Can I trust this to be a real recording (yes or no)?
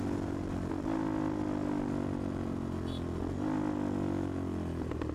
yes